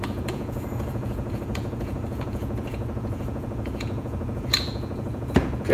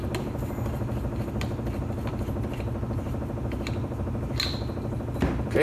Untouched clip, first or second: second